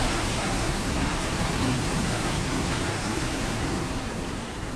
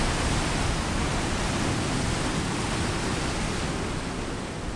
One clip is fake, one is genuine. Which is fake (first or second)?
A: first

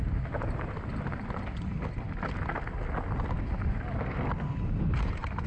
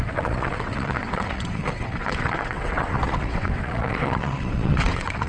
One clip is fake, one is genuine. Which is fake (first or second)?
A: second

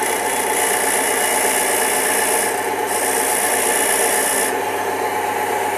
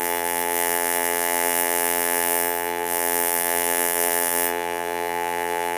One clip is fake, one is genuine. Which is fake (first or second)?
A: second